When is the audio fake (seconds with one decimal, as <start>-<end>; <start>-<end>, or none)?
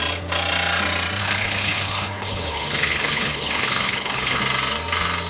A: 1.2-4.4